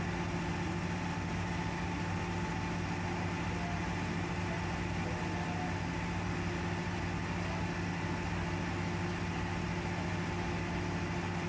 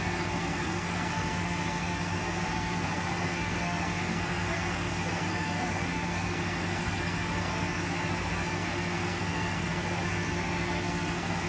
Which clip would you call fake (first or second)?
second